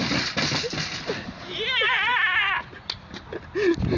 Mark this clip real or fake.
real